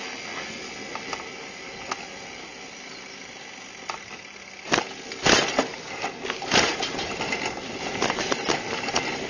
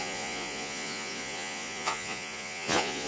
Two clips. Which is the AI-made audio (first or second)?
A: second